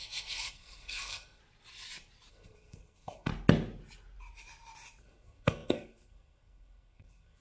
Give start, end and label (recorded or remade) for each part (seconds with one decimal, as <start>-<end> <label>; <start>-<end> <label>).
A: 0.0-1.4 remade; 1.4-2.3 recorded; 2.3-3.3 remade; 3.3-5.0 recorded; 5.0-7.4 remade